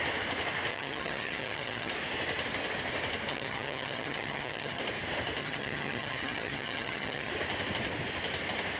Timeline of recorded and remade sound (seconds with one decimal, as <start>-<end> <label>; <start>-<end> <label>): 0.0-0.7 recorded; 0.7-1.9 remade; 1.9-3.3 recorded; 3.3-4.8 remade; 4.8-5.4 recorded; 5.4-7.3 remade; 7.3-8.8 recorded